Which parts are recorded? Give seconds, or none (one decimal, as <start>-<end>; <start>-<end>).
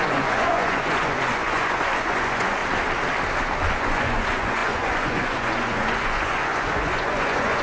2.6-3.7